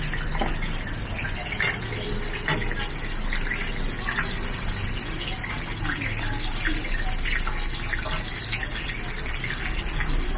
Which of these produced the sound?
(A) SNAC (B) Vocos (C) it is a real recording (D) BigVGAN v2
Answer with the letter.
C